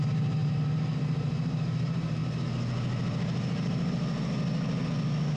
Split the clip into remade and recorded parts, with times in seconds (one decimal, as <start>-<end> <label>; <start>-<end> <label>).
0.0-2.2 remade; 2.2-5.4 recorded